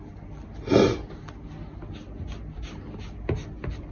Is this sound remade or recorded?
recorded